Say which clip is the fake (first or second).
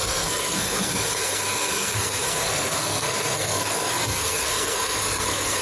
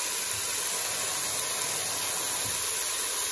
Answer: first